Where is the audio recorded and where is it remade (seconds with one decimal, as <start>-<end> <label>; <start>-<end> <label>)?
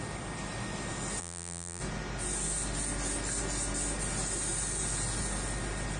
0.0-1.2 recorded; 1.2-1.8 remade; 1.8-6.0 recorded